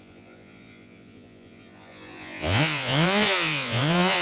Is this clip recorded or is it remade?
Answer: remade